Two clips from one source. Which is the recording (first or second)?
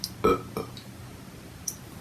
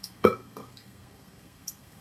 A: first